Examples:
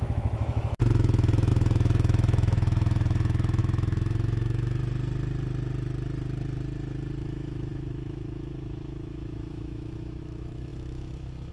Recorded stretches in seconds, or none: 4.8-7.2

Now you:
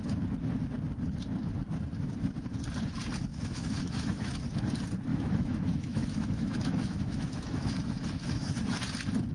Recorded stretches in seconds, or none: 0.0-3.3; 4.4-5.1; 8.5-9.3